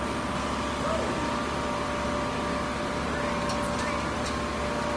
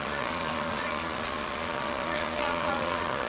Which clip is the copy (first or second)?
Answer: second